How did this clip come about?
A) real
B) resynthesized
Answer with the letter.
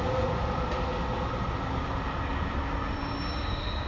A